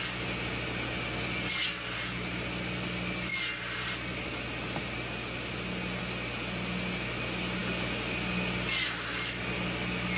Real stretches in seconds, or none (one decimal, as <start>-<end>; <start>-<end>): 0.0-10.2